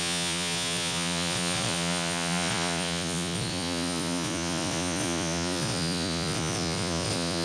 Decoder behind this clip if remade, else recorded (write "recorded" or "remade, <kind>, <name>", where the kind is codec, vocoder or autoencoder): remade, vocoder, Vocos